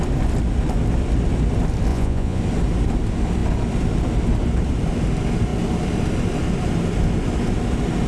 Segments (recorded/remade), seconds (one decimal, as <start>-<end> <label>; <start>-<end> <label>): 0.0-1.9 recorded; 1.9-2.4 remade; 2.4-8.1 recorded